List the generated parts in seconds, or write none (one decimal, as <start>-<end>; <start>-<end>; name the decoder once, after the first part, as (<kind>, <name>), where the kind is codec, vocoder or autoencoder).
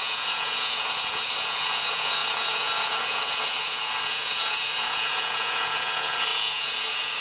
0.0-7.2 (vocoder, Vocos)